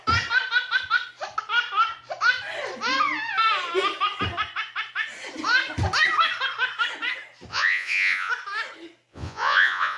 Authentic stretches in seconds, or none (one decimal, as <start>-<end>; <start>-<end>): 0.0-7.5; 8.3-9.1